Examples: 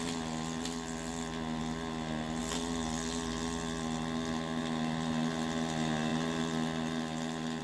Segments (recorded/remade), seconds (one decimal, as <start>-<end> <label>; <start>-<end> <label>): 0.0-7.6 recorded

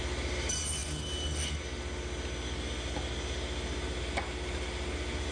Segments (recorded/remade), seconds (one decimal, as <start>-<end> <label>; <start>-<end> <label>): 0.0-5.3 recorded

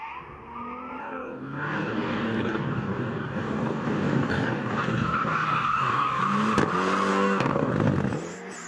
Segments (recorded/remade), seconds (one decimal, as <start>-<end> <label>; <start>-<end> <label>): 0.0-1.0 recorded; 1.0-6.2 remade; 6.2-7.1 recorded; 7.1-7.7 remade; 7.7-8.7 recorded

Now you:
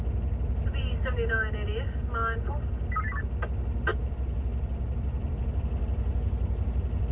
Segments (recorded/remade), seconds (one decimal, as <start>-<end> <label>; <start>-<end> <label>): 0.0-3.9 recorded; 3.9-5.4 remade; 5.4-7.1 recorded

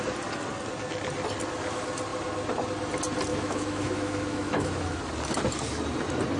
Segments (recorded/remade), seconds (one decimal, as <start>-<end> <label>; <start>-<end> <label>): 0.0-3.3 recorded; 3.3-5.0 remade; 5.0-6.4 recorded

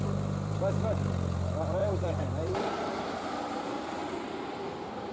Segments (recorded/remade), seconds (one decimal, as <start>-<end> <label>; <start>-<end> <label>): 0.0-1.8 recorded; 1.8-4.2 remade; 4.2-5.1 recorded